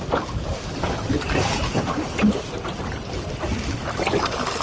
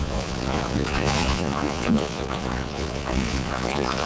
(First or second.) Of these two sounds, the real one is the first